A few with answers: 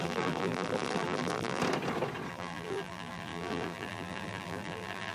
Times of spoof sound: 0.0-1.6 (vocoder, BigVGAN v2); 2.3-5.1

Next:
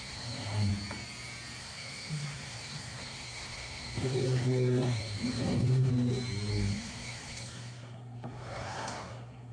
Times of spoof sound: 0.0-0.7 (codec, SNAC); 1.6-5.9; 6.5-9.5

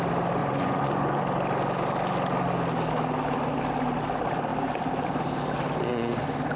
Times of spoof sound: 0.4-1.2 (vocoder, Vocos)

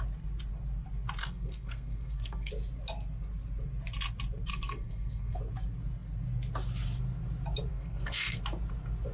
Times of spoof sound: 1.2-2.5 (codec, SNAC); 4.5-5.4; 7.7-8.4